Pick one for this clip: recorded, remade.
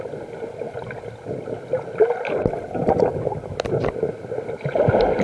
recorded